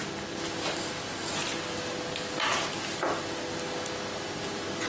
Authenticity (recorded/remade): recorded